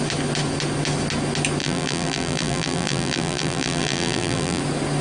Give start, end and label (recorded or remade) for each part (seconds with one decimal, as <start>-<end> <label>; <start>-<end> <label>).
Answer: 0.0-1.6 recorded; 1.6-4.6 remade; 4.6-5.0 recorded

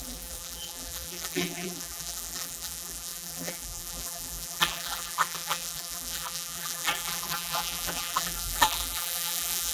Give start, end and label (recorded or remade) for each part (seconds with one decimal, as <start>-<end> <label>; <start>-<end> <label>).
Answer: 0.0-9.7 remade

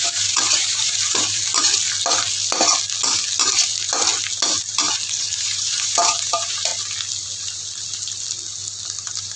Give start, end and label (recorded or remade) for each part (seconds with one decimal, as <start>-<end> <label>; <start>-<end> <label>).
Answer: 0.0-1.4 remade; 1.4-5.2 recorded; 5.2-6.7 remade; 6.7-9.0 recorded; 9.0-9.4 remade

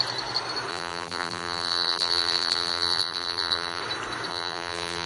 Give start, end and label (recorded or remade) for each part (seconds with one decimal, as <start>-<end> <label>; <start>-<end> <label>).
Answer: 0.0-0.7 recorded; 0.7-3.8 remade; 3.8-4.3 recorded; 4.3-5.1 remade

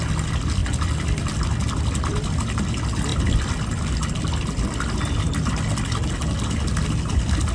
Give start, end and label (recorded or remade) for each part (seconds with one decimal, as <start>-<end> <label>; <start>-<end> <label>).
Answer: 0.0-0.6 recorded; 0.6-2.4 remade; 2.4-3.1 recorded; 3.1-4.9 remade; 4.9-7.5 recorded

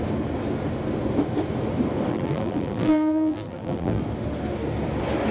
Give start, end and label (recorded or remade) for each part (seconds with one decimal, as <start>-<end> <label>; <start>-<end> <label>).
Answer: 0.0-2.1 recorded; 2.1-4.0 remade; 4.0-5.3 recorded

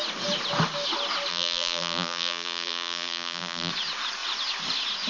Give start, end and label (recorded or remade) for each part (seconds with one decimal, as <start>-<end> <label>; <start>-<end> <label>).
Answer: 0.0-1.3 recorded; 1.3-3.7 remade; 3.7-5.1 recorded

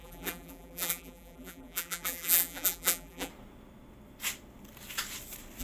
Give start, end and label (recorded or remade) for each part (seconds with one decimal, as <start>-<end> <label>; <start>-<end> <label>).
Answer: 0.0-3.3 remade; 3.3-5.6 recorded